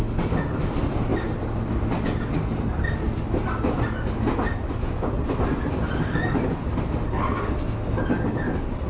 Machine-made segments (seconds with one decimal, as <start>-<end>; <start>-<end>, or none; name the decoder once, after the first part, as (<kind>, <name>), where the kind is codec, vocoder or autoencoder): none